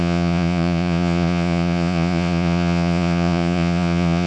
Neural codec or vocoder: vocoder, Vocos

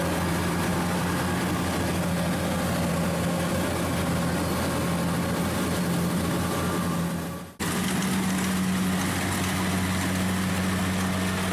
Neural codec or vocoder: none